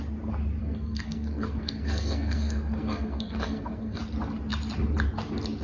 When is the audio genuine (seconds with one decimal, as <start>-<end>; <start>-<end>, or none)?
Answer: 0.0-0.6; 4.0-5.6